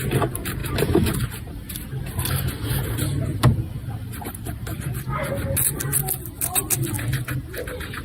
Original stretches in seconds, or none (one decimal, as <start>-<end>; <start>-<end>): 0.0-3.5; 4.1-8.0